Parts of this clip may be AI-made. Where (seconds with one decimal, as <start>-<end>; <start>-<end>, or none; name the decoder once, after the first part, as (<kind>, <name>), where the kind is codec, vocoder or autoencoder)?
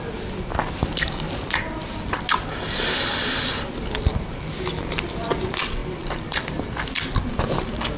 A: none